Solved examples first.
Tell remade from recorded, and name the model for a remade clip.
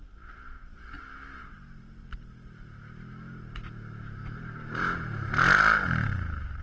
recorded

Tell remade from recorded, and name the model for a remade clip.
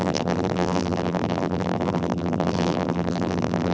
remade, vocoder, BigVGAN v2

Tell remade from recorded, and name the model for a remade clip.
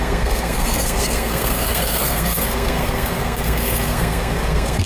remade, codec, SNAC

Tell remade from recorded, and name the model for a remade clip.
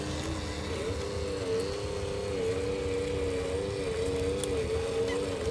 recorded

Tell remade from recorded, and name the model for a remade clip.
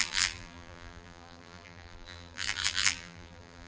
remade, vocoder, BigVGAN v2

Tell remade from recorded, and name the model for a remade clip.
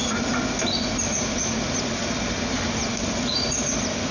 recorded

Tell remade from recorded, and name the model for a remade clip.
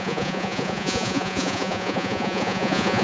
remade, vocoder, Vocos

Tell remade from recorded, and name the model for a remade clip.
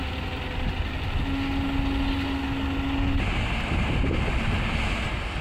recorded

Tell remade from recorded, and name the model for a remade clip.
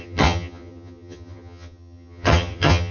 remade, vocoder, HiFi-GAN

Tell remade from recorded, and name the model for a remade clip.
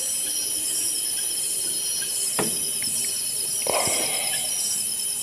recorded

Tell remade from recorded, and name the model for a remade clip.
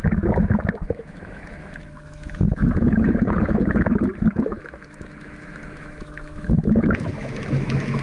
remade, autoencoder, DAC-VAE